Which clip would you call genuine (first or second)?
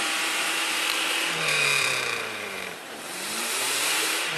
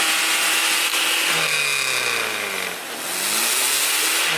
second